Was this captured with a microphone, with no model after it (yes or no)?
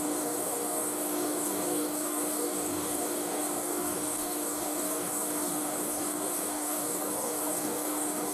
no